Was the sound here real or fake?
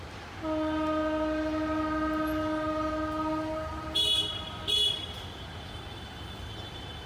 real